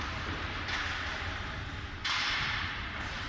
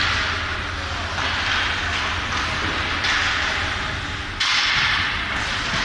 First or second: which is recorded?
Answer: second